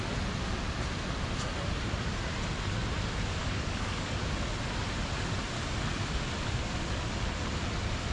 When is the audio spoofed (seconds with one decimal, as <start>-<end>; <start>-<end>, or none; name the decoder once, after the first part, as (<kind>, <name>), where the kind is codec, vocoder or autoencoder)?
3.4-4.2 (codec, DAC)